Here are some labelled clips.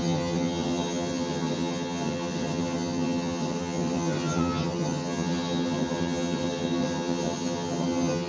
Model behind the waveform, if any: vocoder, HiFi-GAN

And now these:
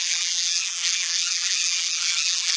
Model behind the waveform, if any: vocoder, BigVGAN v2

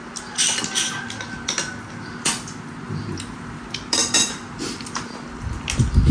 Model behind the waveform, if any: none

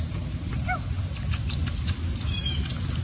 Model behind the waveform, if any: none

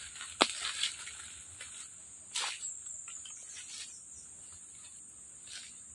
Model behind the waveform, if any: none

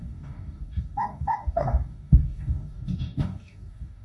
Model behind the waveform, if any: codec, DAC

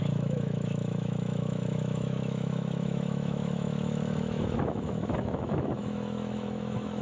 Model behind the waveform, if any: autoencoder, DAC-VAE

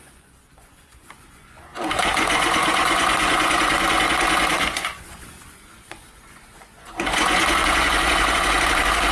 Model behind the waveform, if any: vocoder, Vocos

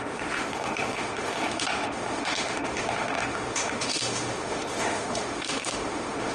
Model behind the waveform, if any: autoencoder, DAC-VAE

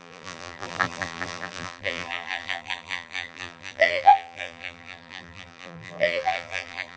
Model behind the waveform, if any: vocoder, BigVGAN v2